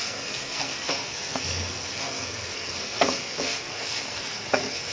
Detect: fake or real fake